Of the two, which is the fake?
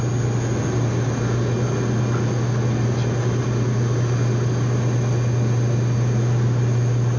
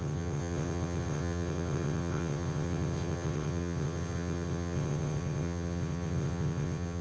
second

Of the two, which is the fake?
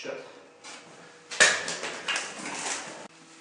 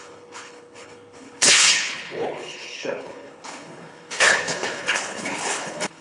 second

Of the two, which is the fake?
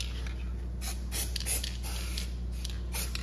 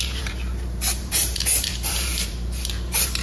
second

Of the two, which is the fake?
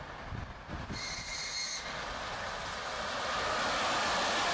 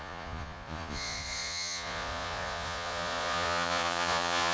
second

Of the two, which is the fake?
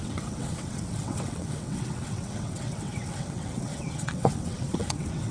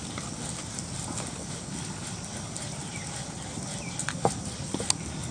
first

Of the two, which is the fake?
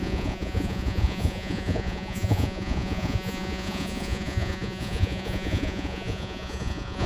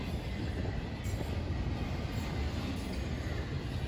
first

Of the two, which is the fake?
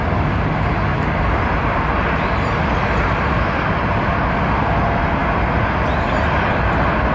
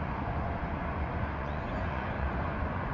second